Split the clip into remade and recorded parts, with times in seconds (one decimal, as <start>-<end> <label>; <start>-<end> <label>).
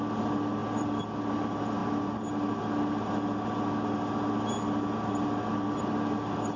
0.0-6.6 recorded